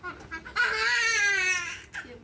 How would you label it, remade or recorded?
recorded